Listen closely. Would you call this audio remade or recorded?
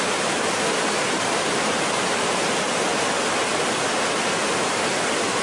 recorded